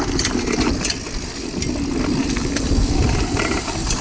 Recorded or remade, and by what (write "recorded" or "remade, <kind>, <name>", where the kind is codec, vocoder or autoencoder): recorded